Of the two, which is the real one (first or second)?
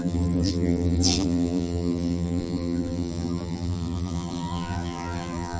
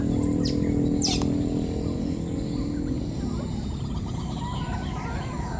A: second